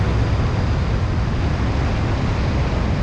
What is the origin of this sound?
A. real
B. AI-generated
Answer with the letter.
A